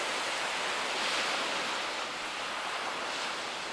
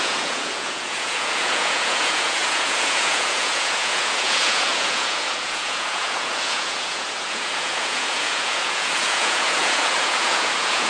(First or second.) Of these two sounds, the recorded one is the first